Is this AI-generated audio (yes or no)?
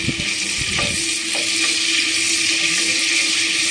no